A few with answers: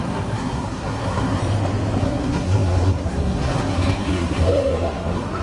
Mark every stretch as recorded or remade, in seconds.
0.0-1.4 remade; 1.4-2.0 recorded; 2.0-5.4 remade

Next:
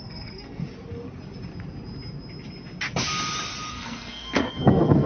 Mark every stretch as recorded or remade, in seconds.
0.0-0.6 remade; 0.6-3.7 recorded; 3.7-5.1 remade

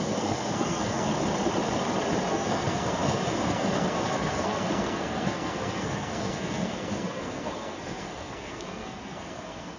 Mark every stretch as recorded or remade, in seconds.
0.0-1.1 remade; 1.1-2.3 recorded; 2.3-9.8 remade

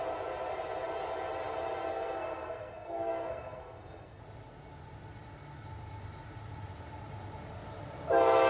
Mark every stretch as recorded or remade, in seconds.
0.0-1.9 recorded; 1.9-4.2 remade; 4.2-8.5 recorded

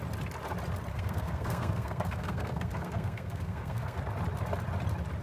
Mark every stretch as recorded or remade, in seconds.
0.0-0.9 recorded; 0.9-4.0 remade; 4.0-5.2 recorded

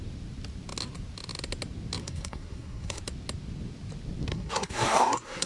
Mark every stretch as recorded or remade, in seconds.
0.0-2.0 recorded; 2.0-3.0 remade; 3.0-4.3 recorded; 4.3-5.5 remade